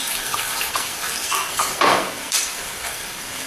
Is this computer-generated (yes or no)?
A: yes